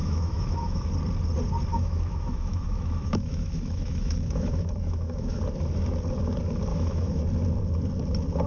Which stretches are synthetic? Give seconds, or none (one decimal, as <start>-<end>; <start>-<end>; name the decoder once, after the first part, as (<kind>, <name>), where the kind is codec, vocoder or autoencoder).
0.0-0.9 (autoencoder, DAC-VAE); 1.7-5.4; 6.7-7.2